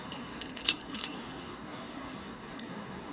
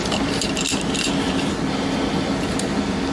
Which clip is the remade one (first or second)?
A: first